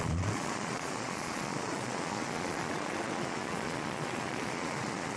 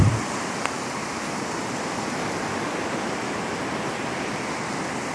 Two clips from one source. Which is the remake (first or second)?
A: first